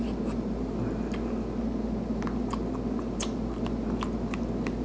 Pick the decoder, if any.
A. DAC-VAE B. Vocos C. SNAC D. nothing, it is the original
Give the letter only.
D